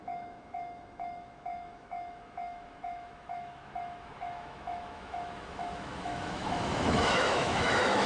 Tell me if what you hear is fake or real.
fake